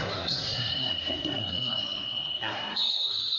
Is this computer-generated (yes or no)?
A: yes